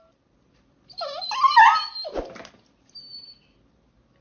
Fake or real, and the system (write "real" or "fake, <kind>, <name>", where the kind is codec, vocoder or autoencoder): real